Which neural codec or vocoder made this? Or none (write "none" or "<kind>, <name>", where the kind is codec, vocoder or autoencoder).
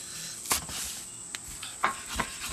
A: none